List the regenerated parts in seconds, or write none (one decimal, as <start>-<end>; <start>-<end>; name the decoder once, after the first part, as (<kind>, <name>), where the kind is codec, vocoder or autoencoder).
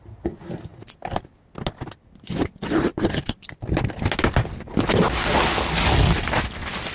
none